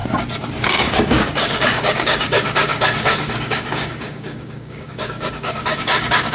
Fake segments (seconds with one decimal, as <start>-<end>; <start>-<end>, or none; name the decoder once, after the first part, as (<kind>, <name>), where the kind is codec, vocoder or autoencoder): 0.7-6.3 (codec, DAC)